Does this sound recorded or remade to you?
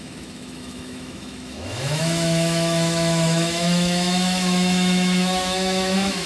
remade